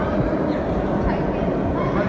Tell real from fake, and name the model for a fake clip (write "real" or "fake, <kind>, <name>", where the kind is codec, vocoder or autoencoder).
real